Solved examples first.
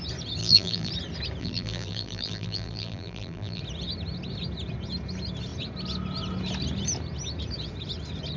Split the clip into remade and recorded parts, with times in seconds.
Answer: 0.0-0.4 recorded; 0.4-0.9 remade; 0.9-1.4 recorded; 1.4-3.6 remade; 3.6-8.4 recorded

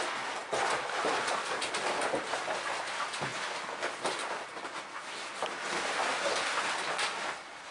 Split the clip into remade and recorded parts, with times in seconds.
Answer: 0.0-7.7 recorded